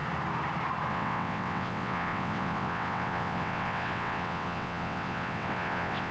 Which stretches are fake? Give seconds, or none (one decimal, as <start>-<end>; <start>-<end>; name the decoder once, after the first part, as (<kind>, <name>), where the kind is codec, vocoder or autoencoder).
0.9-6.1 (vocoder, WaveNeXt)